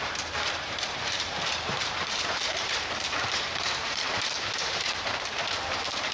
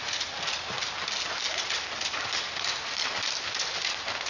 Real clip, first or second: second